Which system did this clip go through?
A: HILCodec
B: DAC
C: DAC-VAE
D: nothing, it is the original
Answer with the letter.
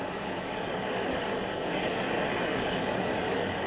B